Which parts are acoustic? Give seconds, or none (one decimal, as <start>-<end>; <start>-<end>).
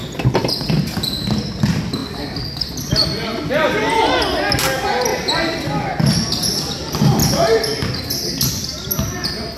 0.0-9.6